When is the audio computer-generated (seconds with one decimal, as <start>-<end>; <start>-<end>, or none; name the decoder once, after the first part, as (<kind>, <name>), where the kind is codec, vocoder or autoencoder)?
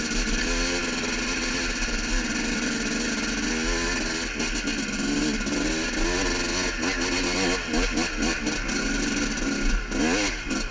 0.8-2.7 (vocoder, BigVGAN v2)